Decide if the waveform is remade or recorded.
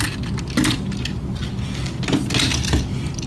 recorded